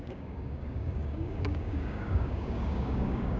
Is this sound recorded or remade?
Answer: remade